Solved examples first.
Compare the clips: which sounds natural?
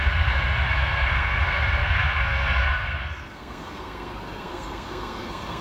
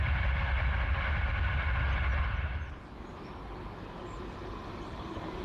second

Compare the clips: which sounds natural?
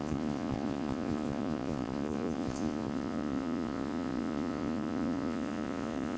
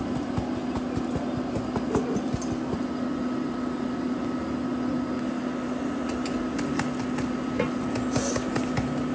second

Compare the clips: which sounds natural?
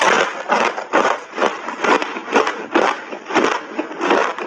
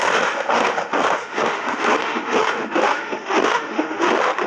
first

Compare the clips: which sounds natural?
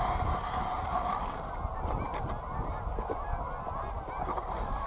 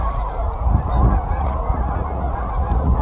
first